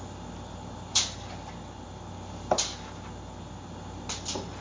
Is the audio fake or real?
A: real